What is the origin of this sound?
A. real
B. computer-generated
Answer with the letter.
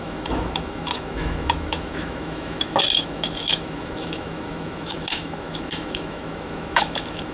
B